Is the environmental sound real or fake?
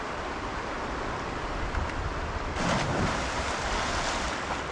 real